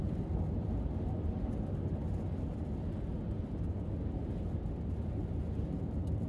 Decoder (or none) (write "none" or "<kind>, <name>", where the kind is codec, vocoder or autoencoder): none